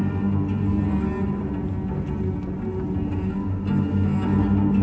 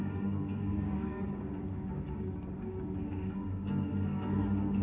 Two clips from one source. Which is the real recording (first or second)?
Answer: first